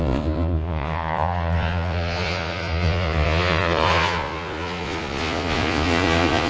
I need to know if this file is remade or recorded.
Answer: remade